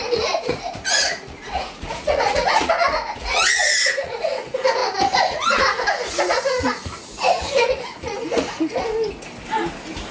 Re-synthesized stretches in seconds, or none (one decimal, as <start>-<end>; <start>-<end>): 0.0-8.8